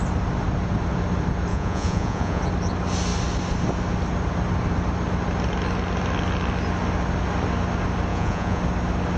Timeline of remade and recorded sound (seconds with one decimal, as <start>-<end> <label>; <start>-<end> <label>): 0.0-1.5 recorded; 1.5-2.4 remade; 2.4-8.1 recorded; 8.1-8.6 remade; 8.6-9.2 recorded